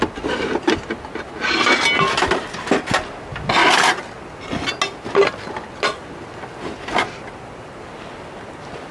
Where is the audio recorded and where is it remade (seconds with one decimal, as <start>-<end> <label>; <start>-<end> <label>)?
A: 0.0-8.9 recorded